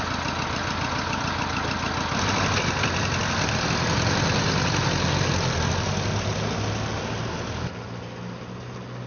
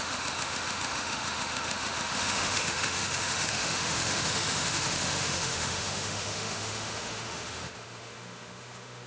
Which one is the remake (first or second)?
second